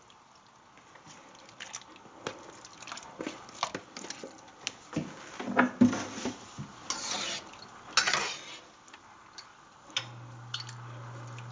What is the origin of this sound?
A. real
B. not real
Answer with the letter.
A